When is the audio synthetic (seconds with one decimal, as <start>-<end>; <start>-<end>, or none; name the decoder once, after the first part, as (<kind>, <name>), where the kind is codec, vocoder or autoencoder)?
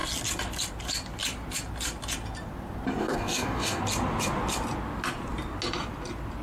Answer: 3.0-3.8 (codec, DAC)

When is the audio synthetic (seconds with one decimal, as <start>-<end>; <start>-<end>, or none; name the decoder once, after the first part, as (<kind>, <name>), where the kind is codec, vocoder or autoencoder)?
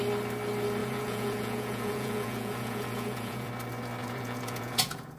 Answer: 0.8-3.5 (vocoder, Vocos); 4.0-5.2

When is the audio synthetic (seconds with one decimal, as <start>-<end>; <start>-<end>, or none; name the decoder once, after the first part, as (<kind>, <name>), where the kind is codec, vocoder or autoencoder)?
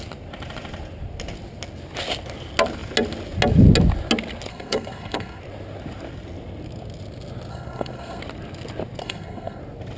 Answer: 4.5-5.4 (codec, SNAC); 7.5-8.2; 9.0-9.6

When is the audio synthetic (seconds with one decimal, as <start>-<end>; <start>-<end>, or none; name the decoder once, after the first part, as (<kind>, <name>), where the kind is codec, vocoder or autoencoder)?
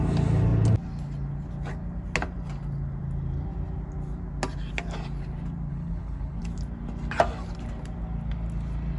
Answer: 5.7-6.4 (codec, HILCodec)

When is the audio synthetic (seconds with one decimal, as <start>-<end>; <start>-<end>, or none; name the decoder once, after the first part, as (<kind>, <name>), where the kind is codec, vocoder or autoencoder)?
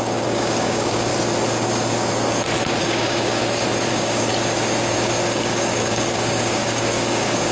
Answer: 0.0-1.1 (codec, DAC); 2.8-3.4; 3.9-4.3; 5.2-7.5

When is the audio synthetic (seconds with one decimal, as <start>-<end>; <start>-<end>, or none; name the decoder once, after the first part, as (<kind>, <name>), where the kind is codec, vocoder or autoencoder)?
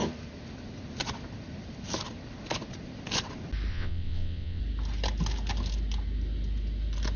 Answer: 3.7-4.6 (vocoder, WaveNeXt)